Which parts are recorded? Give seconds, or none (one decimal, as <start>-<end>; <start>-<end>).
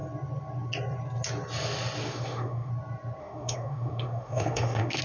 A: 0.0-2.0; 2.7-3.2